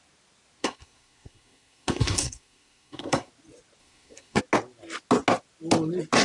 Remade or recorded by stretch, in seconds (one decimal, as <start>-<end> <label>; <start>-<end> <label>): 0.0-0.6 recorded; 0.6-3.3 remade; 3.3-3.8 recorded; 3.8-4.4 remade; 4.4-6.2 recorded